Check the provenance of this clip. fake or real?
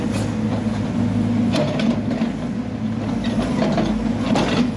real